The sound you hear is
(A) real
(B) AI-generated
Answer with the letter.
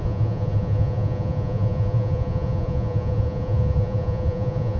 B